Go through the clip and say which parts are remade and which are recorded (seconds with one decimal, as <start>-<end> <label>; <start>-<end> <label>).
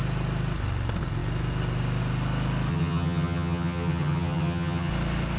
0.0-2.7 recorded; 2.7-4.9 remade; 4.9-5.4 recorded